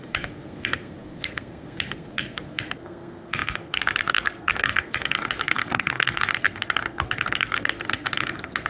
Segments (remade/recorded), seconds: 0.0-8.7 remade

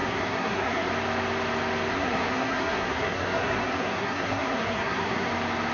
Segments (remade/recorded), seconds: 0.0-0.9 remade; 0.9-1.9 recorded; 1.9-5.3 remade; 5.3-5.7 recorded

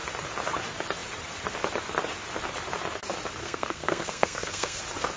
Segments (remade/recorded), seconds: 0.0-3.4 recorded; 3.4-4.8 remade; 4.8-5.2 recorded